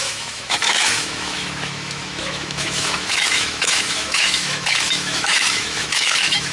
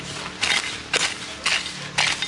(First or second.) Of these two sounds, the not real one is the first